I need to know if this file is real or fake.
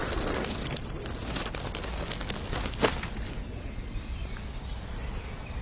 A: real